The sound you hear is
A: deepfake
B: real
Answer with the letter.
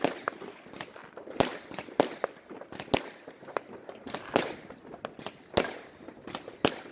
B